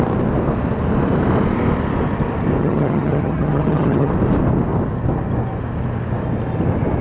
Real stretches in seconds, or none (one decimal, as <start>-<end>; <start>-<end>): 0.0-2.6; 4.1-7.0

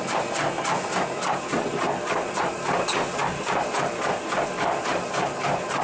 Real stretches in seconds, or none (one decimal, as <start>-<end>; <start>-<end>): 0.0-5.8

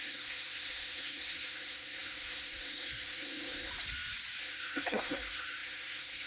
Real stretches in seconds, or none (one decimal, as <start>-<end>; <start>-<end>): 3.7-4.4

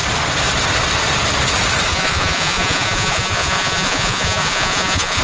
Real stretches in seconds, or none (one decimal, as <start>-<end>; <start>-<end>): 0.0-1.9